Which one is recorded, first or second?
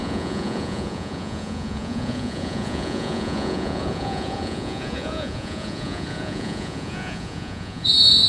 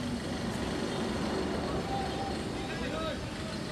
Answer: second